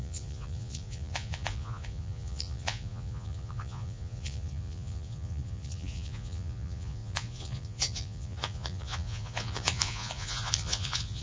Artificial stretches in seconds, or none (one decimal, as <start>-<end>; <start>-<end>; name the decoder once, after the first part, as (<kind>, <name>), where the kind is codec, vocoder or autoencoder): 0.0-11.2 (vocoder, Vocos)